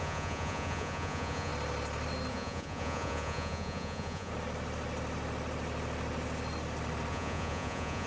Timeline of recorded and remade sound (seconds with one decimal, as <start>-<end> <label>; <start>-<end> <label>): 0.0-1.5 remade; 1.5-2.3 recorded; 2.3-4.3 remade; 4.3-7.1 recorded; 7.1-8.1 remade